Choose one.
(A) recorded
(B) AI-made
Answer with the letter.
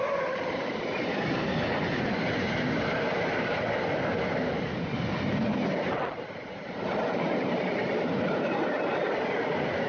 A